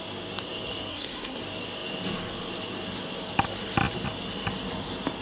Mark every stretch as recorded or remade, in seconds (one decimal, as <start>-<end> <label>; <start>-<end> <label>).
0.0-0.9 recorded; 0.9-1.4 remade; 1.4-5.2 recorded